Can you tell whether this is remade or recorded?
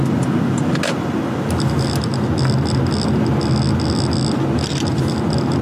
recorded